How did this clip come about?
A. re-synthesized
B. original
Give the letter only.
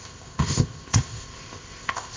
A